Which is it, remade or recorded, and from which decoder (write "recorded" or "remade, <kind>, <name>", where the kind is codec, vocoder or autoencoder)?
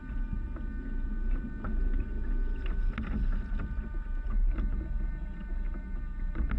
recorded